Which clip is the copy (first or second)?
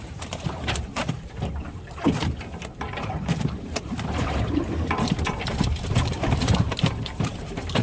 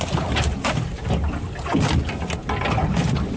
first